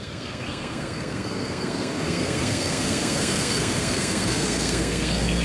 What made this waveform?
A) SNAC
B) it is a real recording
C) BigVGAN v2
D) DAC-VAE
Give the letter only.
A